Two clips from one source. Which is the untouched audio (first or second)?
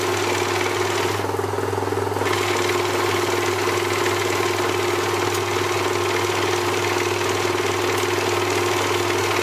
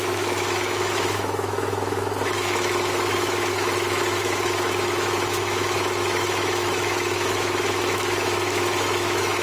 first